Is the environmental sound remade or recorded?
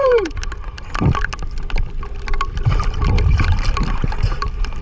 remade